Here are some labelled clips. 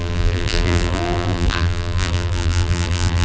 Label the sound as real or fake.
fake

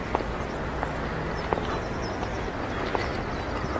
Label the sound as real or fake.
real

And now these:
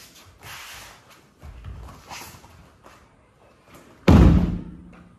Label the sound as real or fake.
real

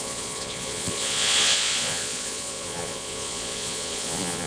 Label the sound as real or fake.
fake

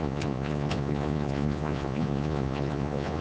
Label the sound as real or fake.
fake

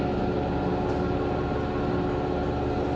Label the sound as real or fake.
real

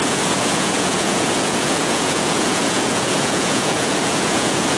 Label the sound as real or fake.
fake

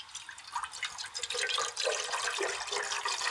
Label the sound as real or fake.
real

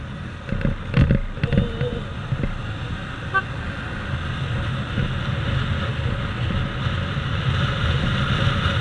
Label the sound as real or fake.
real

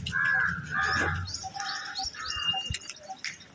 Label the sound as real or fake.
real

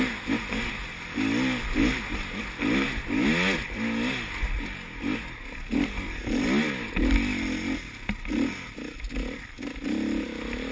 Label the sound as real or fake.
real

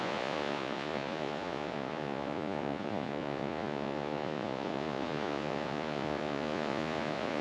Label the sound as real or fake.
fake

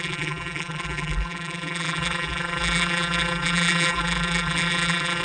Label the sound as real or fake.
fake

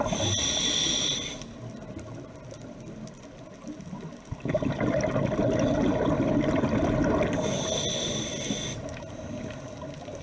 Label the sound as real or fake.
real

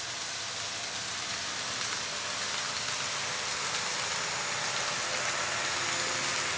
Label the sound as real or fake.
real